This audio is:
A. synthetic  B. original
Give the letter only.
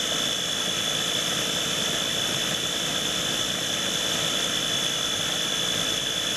B